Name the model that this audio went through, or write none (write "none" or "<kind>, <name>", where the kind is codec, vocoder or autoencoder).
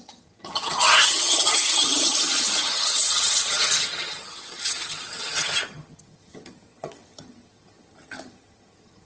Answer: vocoder, HiFi-GAN